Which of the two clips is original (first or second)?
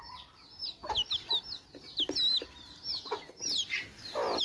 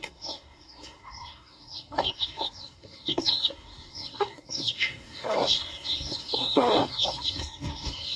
first